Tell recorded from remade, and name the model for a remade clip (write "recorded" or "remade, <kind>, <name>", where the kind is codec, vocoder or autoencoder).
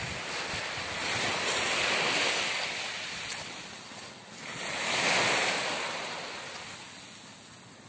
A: recorded